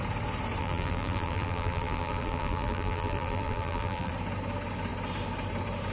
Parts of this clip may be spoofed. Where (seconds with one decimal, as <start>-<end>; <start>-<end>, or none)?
0.6-4.1